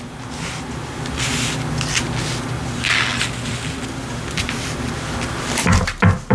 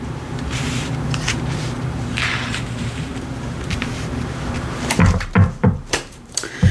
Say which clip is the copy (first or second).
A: second